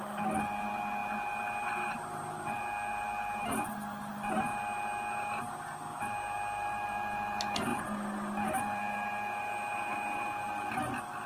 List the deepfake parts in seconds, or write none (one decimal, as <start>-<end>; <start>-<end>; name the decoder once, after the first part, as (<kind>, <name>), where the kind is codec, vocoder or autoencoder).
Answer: none